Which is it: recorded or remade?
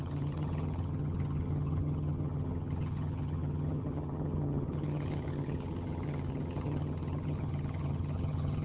remade